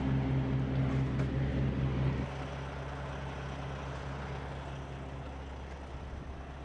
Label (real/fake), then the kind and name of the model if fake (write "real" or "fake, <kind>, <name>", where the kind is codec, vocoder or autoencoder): real